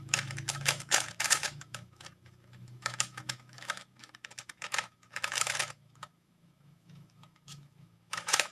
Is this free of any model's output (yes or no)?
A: no